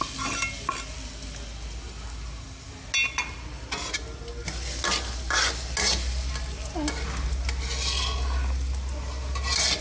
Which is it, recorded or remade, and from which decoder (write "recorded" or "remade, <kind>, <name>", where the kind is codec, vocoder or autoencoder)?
recorded